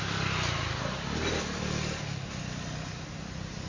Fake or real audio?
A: real